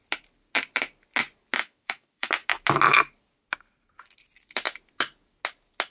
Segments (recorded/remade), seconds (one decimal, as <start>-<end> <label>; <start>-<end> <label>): 0.0-1.6 recorded; 1.6-2.3 remade; 2.3-5.9 recorded

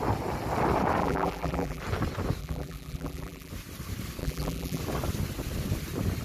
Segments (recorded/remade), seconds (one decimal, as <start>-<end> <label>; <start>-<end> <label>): 0.0-1.0 recorded; 1.0-1.8 remade; 1.8-2.4 recorded; 2.4-3.5 remade; 3.5-4.2 recorded; 4.2-4.8 remade; 4.8-6.2 recorded